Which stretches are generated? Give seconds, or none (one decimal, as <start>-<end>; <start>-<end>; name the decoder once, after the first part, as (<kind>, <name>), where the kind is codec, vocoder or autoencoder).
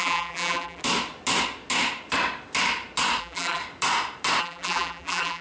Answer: 0.0-0.8 (vocoder, BigVGAN v2); 3.2-3.6; 4.4-5.4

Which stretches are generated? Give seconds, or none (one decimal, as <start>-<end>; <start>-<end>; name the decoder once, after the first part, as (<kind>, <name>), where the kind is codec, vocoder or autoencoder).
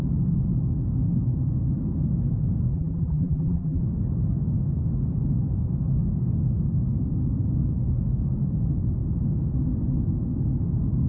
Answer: 2.7-3.8 (vocoder, BigVGAN v2)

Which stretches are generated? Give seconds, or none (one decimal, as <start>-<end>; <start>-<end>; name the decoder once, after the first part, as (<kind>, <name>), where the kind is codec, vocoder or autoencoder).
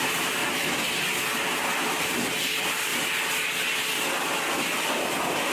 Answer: 0.0-0.4 (vocoder, BigVGAN v2); 2.0-2.9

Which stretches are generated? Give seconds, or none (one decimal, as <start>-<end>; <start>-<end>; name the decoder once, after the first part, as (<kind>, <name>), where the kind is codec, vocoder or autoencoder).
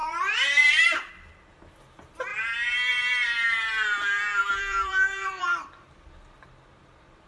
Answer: 0.0-1.1 (vocoder, BigVGAN v2); 2.3-6.2